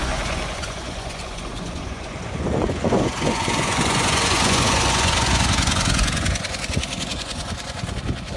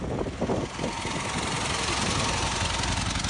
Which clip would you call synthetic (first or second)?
first